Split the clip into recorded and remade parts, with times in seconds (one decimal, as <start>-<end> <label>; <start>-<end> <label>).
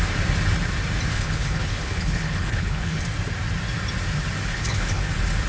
0.0-1.1 recorded; 1.1-3.0 remade; 3.0-4.5 recorded; 4.5-5.1 remade; 5.1-5.5 recorded